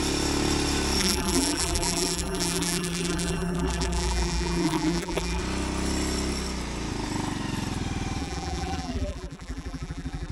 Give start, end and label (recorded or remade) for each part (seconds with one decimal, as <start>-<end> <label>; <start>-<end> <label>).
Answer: 0.0-1.0 recorded; 1.0-5.4 remade; 5.4-8.2 recorded; 8.2-10.3 remade

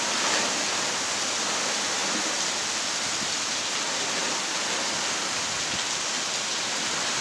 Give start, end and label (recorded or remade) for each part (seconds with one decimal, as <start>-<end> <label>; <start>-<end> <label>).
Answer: 0.0-7.2 recorded

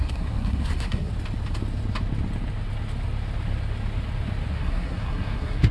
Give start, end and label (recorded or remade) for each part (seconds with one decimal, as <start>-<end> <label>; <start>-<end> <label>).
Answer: 0.0-1.1 remade; 1.1-4.5 recorded; 4.5-5.7 remade